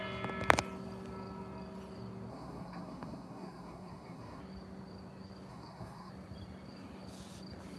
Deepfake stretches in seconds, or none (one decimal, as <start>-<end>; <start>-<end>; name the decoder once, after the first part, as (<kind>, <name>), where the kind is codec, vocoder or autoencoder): 2.3-4.4 (codec, SNAC); 5.5-6.1